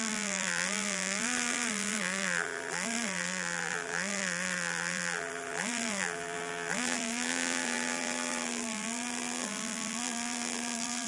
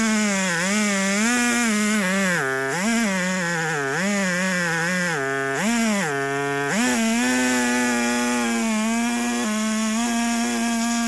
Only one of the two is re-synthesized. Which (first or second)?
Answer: first